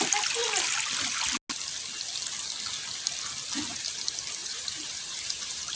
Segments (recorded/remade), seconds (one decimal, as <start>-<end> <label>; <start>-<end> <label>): 0.0-4.4 recorded; 4.4-5.7 remade